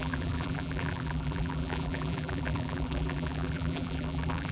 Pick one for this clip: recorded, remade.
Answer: remade